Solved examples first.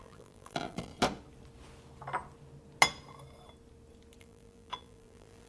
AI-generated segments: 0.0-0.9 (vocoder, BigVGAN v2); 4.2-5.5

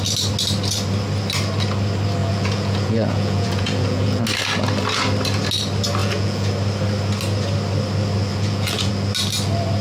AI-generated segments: 2.2-4.2 (vocoder, Vocos); 6.0-6.5; 8.3-8.9

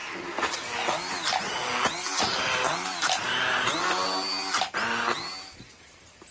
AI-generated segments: none